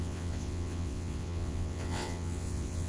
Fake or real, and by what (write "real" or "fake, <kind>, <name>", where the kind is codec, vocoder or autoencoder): fake, vocoder, WaveNeXt